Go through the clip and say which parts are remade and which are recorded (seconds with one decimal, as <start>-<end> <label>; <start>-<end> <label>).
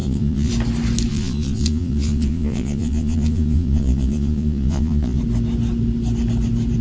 0.0-0.5 remade; 0.5-1.1 recorded; 1.1-5.2 remade; 5.2-6.8 recorded